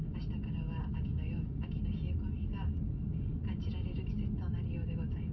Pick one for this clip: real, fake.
real